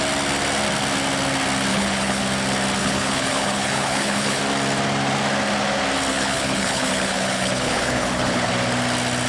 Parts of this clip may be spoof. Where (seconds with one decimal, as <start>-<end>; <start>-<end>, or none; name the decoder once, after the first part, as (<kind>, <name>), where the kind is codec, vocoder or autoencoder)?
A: 1.7-2.2 (codec, HILCodec); 2.8-4.4; 6.1-8.5